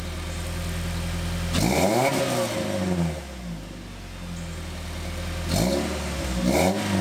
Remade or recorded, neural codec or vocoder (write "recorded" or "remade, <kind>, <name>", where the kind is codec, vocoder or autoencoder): recorded